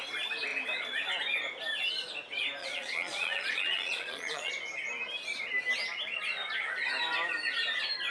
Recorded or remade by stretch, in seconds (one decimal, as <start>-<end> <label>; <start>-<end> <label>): 0.0-2.6 recorded; 2.6-4.5 remade; 4.5-8.1 recorded

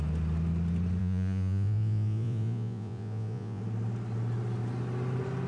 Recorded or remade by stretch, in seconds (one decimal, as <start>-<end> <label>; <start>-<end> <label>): 0.0-1.0 recorded; 1.0-3.6 remade; 3.6-5.5 recorded

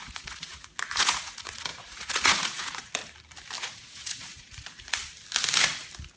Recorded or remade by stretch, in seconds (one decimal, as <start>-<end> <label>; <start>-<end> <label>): 0.0-3.0 remade; 3.0-3.6 recorded; 3.6-5.0 remade; 5.0-6.2 recorded

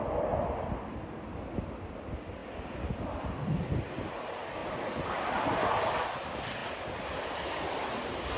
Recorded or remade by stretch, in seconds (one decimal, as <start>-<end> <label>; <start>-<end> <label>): 0.0-8.4 recorded

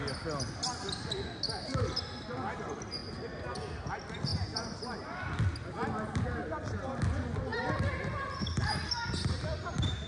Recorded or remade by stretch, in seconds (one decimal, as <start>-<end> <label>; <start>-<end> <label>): 0.0-10.1 recorded